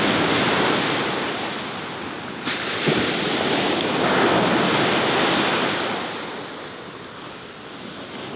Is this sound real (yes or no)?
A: yes